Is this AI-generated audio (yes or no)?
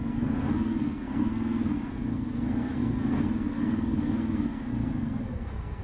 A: yes